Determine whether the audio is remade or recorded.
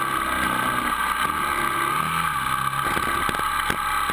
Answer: recorded